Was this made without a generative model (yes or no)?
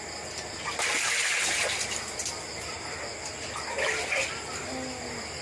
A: yes